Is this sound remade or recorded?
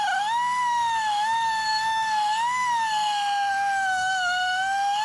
remade